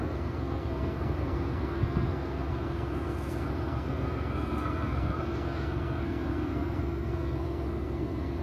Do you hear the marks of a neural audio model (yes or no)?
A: yes